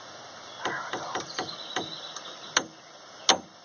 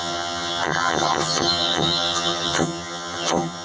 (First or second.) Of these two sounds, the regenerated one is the second